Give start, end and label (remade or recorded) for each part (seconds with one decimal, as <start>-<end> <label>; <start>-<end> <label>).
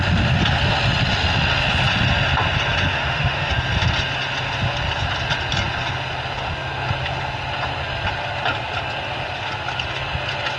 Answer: 0.0-2.9 recorded; 2.9-3.5 remade; 3.5-10.6 recorded